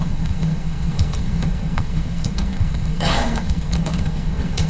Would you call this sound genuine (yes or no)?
no